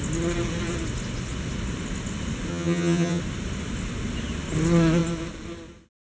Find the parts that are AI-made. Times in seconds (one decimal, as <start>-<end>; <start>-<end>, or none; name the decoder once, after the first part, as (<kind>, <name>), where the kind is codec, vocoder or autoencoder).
2.5-3.2 (vocoder, HiFi-GAN)